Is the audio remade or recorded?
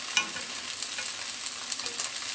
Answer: recorded